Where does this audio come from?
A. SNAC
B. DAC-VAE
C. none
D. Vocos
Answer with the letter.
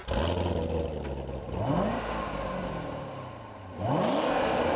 C